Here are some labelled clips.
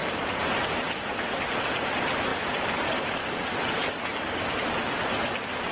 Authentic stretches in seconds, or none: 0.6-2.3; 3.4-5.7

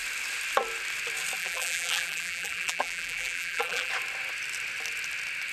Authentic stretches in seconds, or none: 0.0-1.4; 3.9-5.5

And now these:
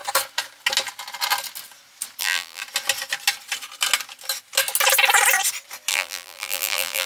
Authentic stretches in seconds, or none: 0.0-2.2; 2.6-5.9

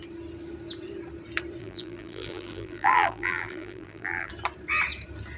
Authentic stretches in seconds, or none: 0.0-1.6; 4.3-5.4

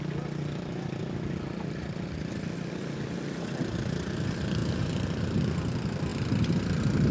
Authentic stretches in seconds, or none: 0.0-4.6; 5.4-7.1

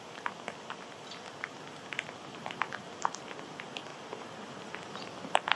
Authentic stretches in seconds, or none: 0.0-2.3; 2.9-3.9; 5.0-5.6

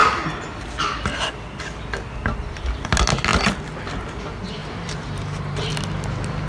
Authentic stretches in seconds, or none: 0.0-4.6; 5.7-6.5

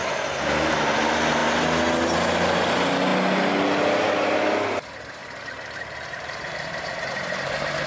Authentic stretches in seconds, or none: 0.7-5.2; 7.5-7.9